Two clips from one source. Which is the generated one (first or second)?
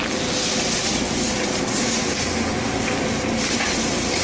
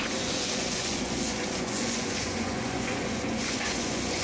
second